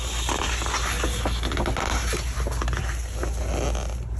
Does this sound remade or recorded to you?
recorded